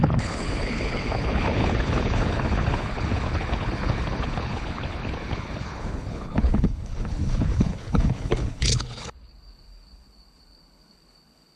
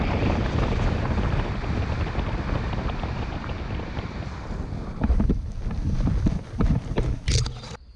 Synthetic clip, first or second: first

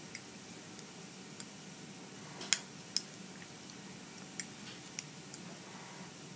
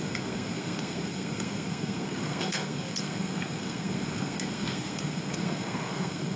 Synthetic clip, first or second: second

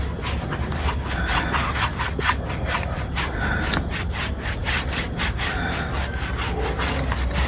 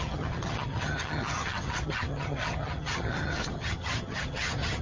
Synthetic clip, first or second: second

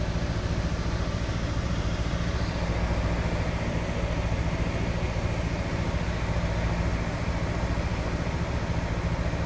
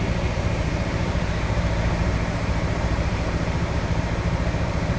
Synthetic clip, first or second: second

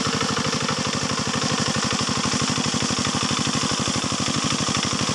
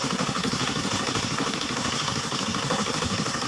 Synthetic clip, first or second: second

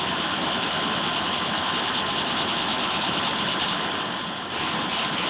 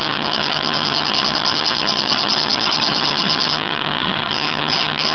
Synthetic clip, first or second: second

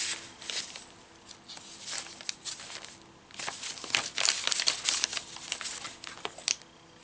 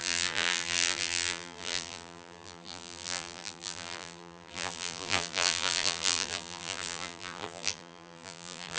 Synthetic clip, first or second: second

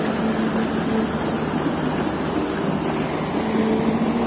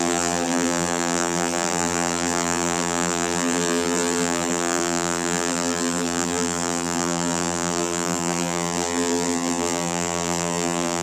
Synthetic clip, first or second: second